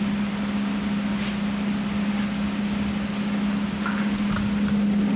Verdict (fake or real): real